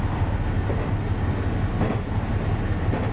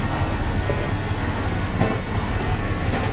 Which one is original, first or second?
first